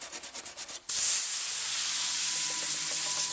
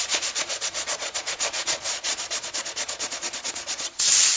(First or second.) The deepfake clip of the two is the second